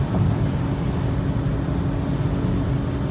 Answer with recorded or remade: recorded